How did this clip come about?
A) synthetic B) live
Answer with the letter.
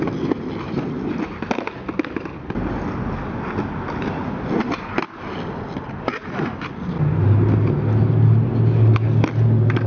B